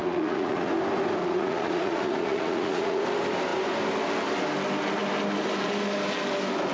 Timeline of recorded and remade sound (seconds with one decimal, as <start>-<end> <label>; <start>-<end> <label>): 0.0-0.7 remade; 0.7-1.2 recorded; 1.2-3.0 remade; 3.0-6.7 recorded